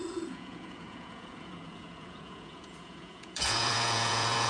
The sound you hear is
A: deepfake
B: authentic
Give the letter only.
A